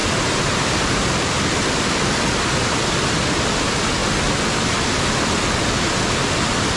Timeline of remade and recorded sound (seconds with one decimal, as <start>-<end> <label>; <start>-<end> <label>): 0.0-6.8 recorded